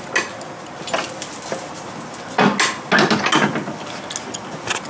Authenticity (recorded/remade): recorded